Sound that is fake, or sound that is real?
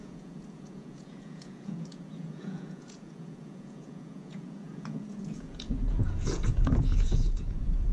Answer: fake